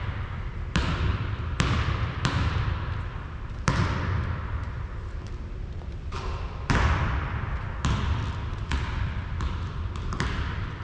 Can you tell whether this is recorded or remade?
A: remade